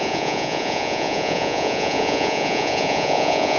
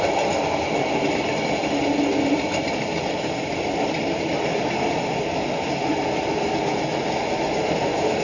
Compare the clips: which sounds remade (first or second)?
first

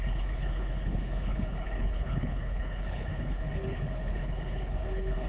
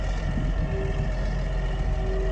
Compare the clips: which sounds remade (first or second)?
first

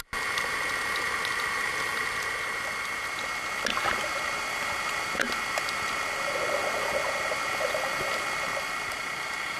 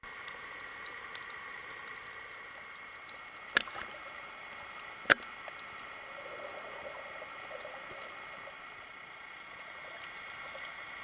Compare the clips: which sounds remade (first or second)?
second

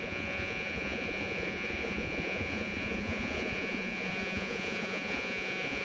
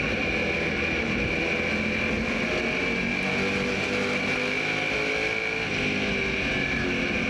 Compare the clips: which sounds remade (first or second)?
first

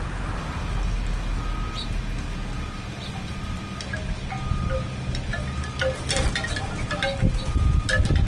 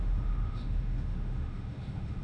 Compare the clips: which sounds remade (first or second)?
second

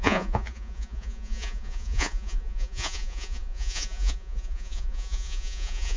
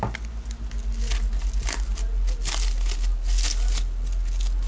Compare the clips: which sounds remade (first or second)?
first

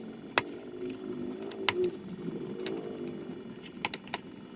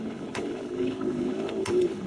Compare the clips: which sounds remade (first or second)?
second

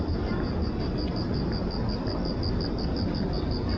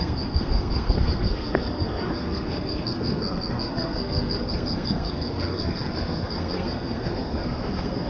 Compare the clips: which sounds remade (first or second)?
second